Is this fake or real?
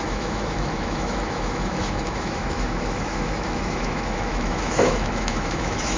fake